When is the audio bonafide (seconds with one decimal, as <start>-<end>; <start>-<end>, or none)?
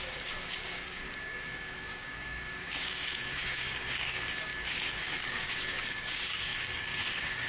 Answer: none